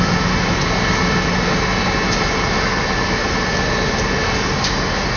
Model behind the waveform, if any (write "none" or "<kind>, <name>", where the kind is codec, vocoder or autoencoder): none